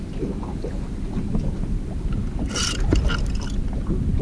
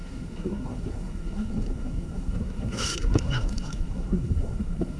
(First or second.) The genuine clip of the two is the first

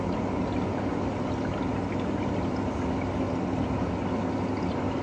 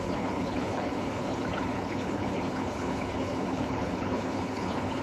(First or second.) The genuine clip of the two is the first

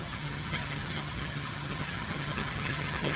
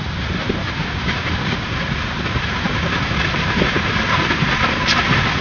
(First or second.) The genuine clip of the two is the second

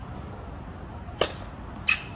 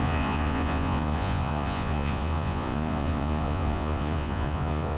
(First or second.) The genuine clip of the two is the first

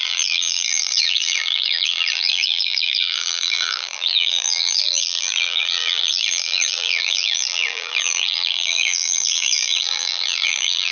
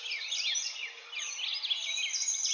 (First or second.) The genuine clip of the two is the second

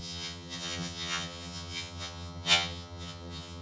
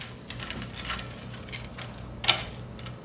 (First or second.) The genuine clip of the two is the second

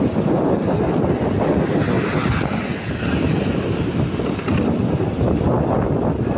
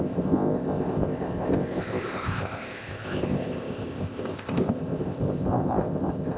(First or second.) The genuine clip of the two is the first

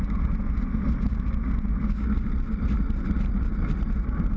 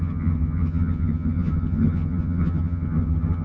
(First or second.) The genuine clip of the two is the first